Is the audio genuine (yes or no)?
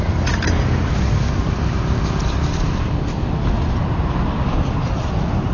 yes